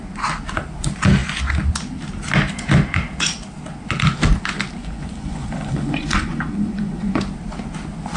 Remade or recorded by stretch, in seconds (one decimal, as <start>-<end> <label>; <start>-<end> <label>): 0.0-4.8 recorded; 4.8-7.2 remade; 7.2-8.2 recorded